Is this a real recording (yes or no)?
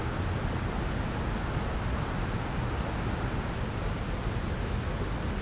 yes